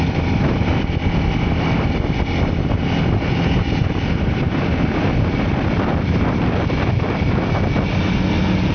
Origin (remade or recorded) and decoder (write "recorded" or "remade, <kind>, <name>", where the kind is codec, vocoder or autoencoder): recorded